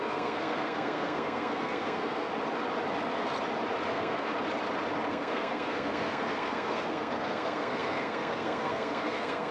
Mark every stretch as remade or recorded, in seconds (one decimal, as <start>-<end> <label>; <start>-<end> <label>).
0.0-2.3 remade; 2.3-3.9 recorded; 3.9-4.3 remade; 4.3-5.1 recorded; 5.1-9.5 remade

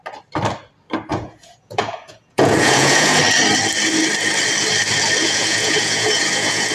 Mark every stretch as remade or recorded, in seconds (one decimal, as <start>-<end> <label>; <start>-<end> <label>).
0.0-1.1 recorded; 1.1-3.2 remade; 3.2-5.2 recorded; 5.2-6.7 remade

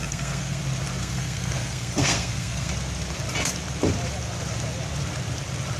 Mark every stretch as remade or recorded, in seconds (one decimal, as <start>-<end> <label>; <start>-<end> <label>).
0.0-0.6 remade; 0.6-1.0 recorded; 1.0-2.7 remade; 2.7-5.8 recorded

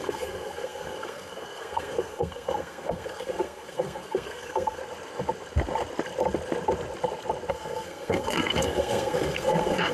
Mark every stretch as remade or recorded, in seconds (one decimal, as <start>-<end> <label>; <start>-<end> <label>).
0.0-4.8 remade; 4.8-7.5 recorded; 7.5-9.9 remade

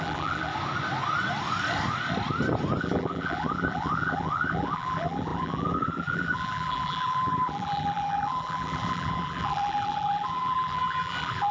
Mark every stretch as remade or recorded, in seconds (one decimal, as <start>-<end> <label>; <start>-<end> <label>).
0.0-0.5 remade; 0.5-2.8 recorded; 2.8-11.5 remade

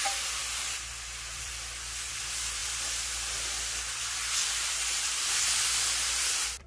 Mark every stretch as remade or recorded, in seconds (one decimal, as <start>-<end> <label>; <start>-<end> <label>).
0.0-0.4 recorded; 0.4-2.1 remade; 2.1-2.6 recorded; 2.6-6.7 remade